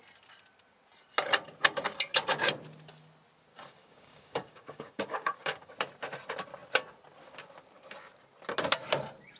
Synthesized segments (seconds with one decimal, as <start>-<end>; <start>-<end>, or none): 3.5-5.7